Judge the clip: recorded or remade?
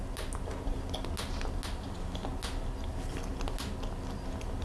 recorded